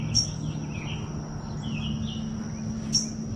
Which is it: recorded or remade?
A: recorded